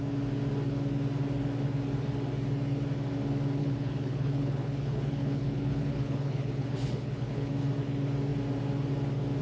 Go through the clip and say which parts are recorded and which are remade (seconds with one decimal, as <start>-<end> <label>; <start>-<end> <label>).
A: 0.0-3.6 recorded; 3.6-7.5 remade; 7.5-9.4 recorded